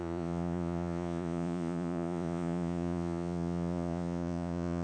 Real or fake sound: fake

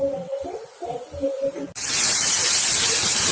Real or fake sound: real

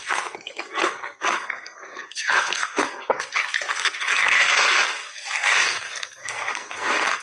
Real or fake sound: fake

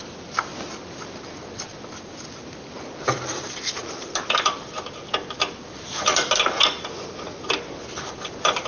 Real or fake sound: real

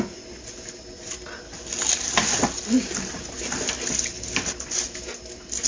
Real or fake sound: real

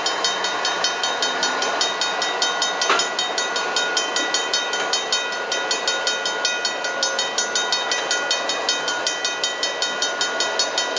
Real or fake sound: real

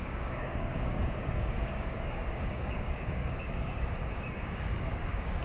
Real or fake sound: fake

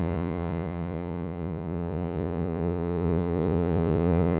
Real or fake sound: fake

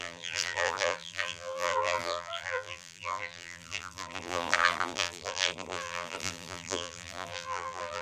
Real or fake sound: fake